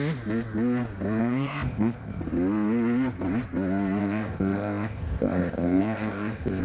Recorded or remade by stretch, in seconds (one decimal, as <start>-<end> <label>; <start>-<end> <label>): 0.0-1.2 recorded; 1.2-2.2 remade; 2.2-4.0 recorded; 4.0-6.6 remade